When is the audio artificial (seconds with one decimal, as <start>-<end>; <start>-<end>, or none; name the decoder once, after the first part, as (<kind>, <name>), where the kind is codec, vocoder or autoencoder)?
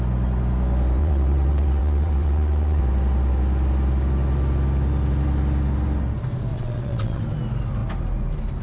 1.0-2.8 (vocoder, WaveNeXt); 6.5-7.2